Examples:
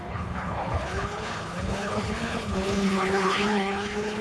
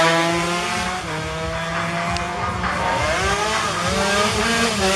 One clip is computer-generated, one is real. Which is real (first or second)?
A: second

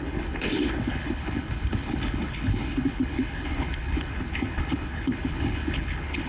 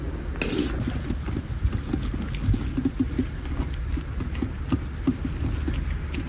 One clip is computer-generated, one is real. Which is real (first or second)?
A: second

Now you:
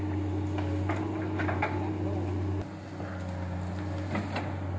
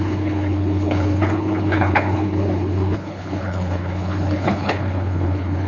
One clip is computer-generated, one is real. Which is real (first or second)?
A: first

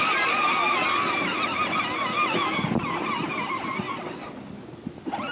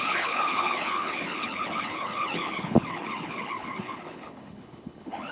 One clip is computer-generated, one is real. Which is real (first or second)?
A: first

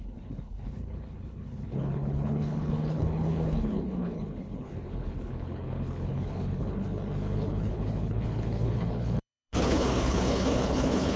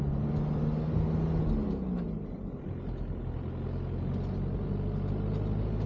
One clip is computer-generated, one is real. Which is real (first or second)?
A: second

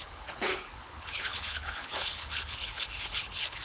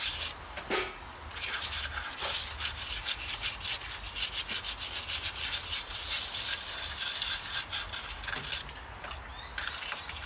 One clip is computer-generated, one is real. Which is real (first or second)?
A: second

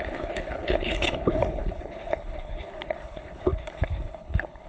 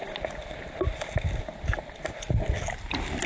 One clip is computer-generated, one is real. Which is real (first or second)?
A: second